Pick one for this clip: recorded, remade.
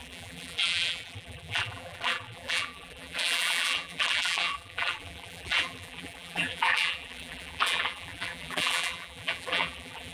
remade